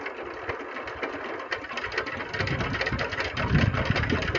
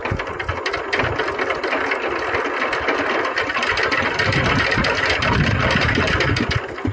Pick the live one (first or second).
first